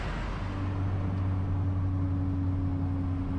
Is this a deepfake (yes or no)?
no